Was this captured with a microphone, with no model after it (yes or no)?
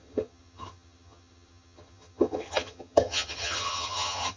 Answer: no